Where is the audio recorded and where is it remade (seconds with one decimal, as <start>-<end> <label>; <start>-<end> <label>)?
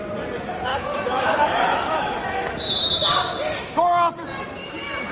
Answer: 0.0-0.7 recorded; 0.7-2.5 remade; 2.5-5.1 recorded